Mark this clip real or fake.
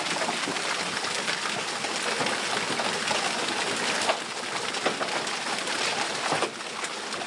real